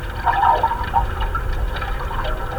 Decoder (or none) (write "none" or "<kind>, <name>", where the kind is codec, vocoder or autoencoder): vocoder, BigVGAN v2